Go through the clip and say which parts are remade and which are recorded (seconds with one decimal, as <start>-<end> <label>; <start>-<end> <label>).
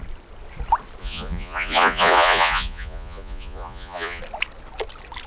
0.0-1.0 recorded; 1.0-4.2 remade; 4.2-5.3 recorded